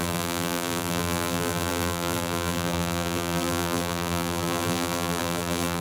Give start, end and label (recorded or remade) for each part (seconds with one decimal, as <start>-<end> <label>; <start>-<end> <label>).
0.0-5.8 remade